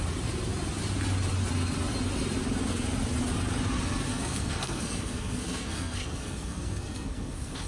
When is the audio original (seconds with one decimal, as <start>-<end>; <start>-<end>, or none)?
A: 0.0-4.1